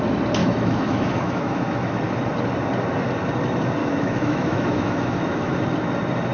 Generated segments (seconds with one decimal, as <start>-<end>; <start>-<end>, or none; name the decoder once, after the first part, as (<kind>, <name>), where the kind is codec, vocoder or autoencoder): 0.4-1.9 (autoencoder, DAC-VAE); 3.8-5.5

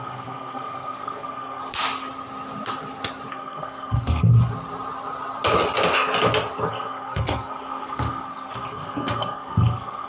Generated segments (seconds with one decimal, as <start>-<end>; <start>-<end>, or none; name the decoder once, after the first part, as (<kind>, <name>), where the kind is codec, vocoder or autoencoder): 0.0-1.6 (codec, SNAC); 3.3-4.3; 6.7-10.1

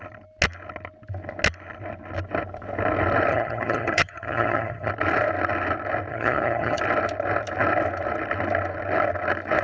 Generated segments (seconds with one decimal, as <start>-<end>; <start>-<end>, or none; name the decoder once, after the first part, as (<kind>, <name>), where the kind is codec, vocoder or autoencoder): 3.3-4.9 (vocoder, HiFi-GAN); 6.1-6.8

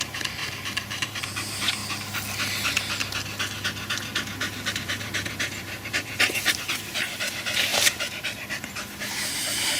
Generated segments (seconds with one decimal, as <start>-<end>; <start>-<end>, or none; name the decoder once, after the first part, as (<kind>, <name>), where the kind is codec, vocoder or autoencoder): 0.0-1.8 (vocoder, BigVGAN v2); 4.7-9.8

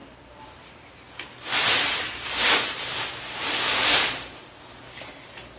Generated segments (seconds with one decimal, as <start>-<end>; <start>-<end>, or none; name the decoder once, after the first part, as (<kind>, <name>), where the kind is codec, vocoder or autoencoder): none

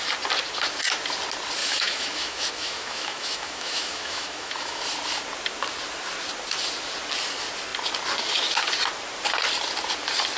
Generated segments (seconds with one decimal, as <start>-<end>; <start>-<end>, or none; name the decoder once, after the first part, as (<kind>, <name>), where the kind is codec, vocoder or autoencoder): 1.6-4.8 (autoencoder, DAC-VAE)

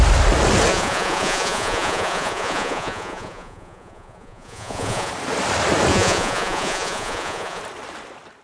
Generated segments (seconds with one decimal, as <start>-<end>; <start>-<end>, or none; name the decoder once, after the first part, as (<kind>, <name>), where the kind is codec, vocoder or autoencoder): 0.7-5.1 (vocoder, Vocos); 5.9-7.6

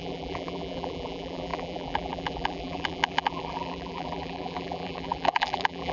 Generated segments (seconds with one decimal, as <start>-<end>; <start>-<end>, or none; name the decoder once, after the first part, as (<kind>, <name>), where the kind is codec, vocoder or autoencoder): 0.0-5.9 (vocoder, BigVGAN v2)